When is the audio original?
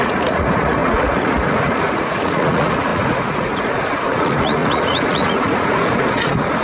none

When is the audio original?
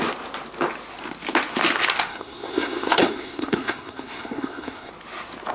0.0-2.1; 4.9-5.5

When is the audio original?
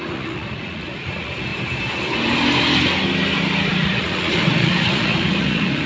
1.5-3.7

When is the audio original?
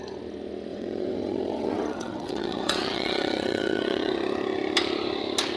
0.0-0.7; 4.1-5.6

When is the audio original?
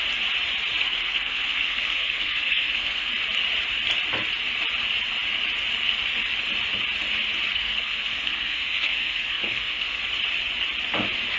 0.0-0.8; 3.1-7.5; 10.0-11.4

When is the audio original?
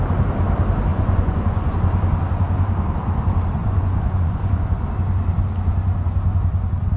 0.0-0.9; 1.8-3.6; 4.9-7.0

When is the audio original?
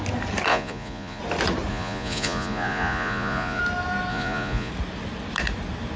0.0-0.5; 1.2-1.7; 3.6-4.1; 4.7-6.0